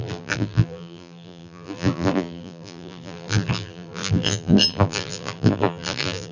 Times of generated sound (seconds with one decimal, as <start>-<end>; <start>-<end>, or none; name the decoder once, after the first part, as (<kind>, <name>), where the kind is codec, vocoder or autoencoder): 0.0-6.3 (vocoder, BigVGAN v2)